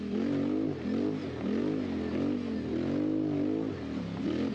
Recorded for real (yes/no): yes